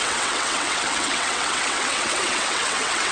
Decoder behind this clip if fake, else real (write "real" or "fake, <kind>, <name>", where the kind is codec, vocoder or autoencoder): fake, vocoder, WaveNeXt